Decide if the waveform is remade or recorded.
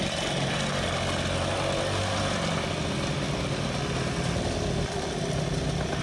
recorded